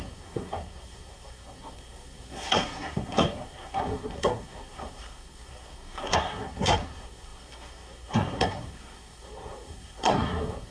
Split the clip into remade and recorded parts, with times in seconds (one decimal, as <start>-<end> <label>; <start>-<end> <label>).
0.0-10.7 remade

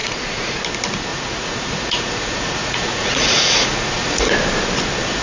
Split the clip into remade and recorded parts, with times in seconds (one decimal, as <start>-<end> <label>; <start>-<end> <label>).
0.0-0.6 remade; 0.6-1.1 recorded; 1.1-4.2 remade; 4.2-5.2 recorded

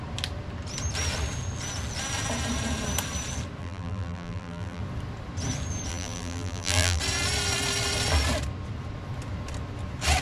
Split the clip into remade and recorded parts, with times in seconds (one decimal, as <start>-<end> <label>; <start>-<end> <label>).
0.0-3.6 recorded; 3.6-4.8 remade; 4.8-5.9 recorded; 5.9-7.0 remade; 7.0-10.2 recorded

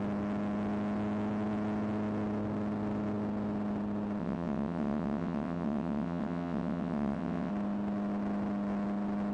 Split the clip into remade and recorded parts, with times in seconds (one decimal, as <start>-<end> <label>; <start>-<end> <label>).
0.0-4.2 recorded; 4.2-7.5 remade; 7.5-9.3 recorded